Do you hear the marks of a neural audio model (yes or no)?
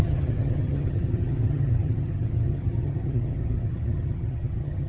yes